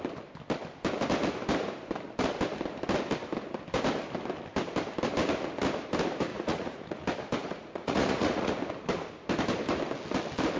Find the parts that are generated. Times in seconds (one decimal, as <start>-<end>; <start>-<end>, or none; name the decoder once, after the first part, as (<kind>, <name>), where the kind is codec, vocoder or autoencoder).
6.3-7.0 (vocoder, Vocos); 7.4-8.5